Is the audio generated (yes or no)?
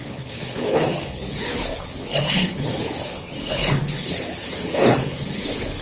yes